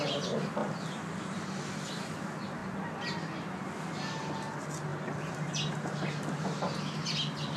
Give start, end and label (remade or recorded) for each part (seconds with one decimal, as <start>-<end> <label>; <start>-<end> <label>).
0.0-7.6 recorded